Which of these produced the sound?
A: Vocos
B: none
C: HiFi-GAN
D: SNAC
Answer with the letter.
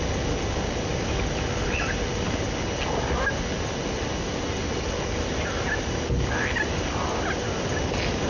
B